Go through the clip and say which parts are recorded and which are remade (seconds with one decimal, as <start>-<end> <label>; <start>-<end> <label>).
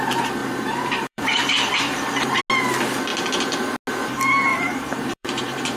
0.0-0.4 recorded; 0.4-2.4 remade; 2.4-4.5 recorded; 4.5-5.8 remade